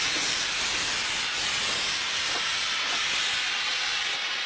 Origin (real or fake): real